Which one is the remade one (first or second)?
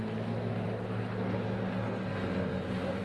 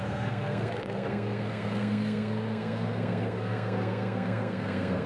second